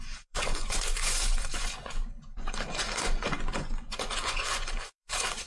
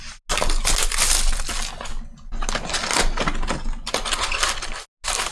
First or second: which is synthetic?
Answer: first